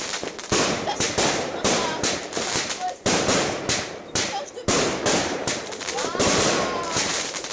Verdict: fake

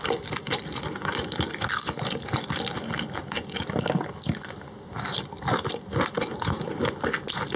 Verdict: real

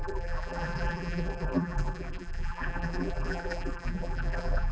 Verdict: fake